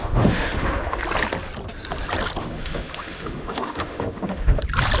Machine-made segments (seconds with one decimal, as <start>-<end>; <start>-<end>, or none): 0.0-1.0; 2.4-4.6